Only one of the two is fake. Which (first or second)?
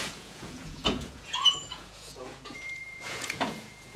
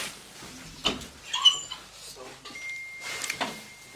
first